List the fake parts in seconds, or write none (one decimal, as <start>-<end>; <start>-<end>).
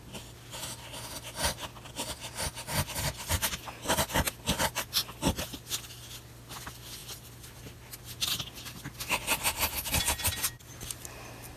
none